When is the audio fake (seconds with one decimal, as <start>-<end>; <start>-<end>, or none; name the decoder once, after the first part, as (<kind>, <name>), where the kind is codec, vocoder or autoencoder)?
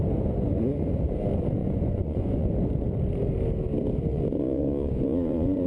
1.6-2.5 (vocoder, Vocos); 4.1-5.7